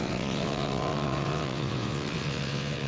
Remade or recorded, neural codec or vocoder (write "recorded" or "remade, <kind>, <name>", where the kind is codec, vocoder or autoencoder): remade, vocoder, WaveNeXt